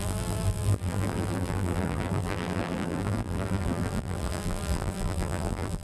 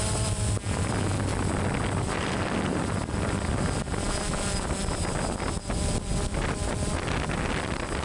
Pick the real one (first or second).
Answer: second